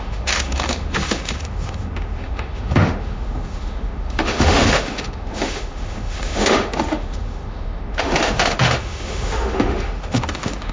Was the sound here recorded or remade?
remade